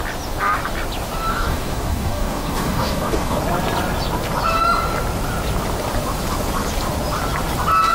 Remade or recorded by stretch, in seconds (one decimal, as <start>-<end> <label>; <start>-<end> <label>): 0.0-1.3 recorded; 1.3-3.4 remade; 3.4-7.9 recorded